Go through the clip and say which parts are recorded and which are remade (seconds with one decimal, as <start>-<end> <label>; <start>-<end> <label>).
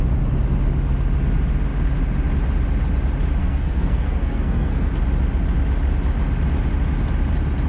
0.0-3.4 recorded; 3.4-4.9 remade; 4.9-7.7 recorded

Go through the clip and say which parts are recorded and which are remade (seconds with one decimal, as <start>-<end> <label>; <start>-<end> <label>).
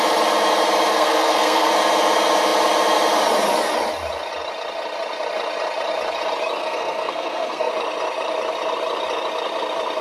0.0-0.9 recorded; 0.9-1.7 remade; 1.7-6.6 recorded; 6.6-7.7 remade; 7.7-10.0 recorded